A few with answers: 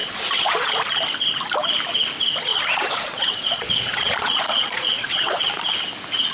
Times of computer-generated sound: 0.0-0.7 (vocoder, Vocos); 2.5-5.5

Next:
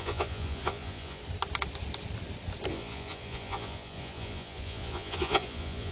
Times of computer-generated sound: 0.0-1.2 (vocoder, Vocos); 2.7-5.9

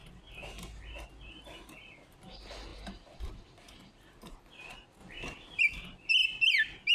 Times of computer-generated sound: none

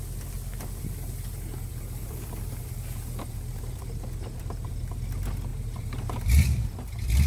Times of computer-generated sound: 1.7-4.7 (vocoder, BigVGAN v2); 5.5-6.8

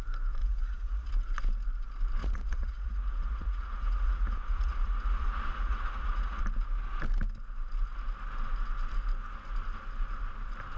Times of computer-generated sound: 0.4-1.1 (vocoder, Vocos); 2.2-6.4

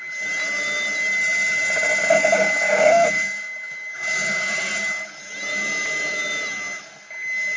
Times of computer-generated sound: 2.0-4.7 (codec, DAC)

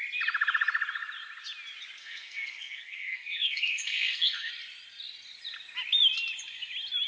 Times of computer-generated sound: 2.0-4.5 (codec, SNAC)

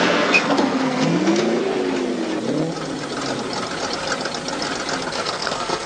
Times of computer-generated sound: 0.0-1.6 (codec, SNAC); 5.1-5.9